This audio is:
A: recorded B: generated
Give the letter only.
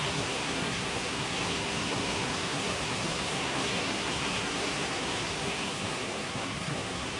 B